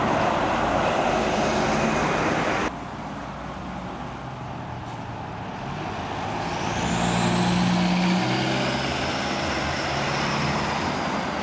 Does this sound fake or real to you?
real